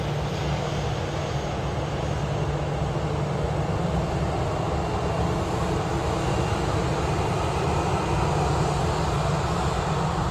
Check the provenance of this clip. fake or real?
real